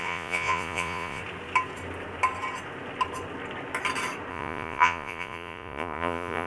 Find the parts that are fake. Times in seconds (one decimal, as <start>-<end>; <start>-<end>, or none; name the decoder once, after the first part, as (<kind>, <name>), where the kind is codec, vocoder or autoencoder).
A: 0.0-1.2 (vocoder, Vocos); 4.3-6.5

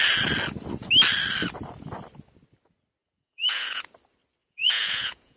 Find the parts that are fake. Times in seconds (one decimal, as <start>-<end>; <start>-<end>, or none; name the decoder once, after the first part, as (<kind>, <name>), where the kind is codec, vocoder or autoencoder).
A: 3.0-3.8 (vocoder, Vocos); 4.4-5.4